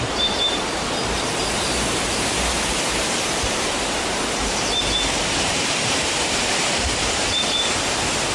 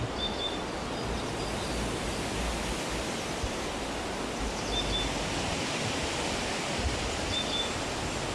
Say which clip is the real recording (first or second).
second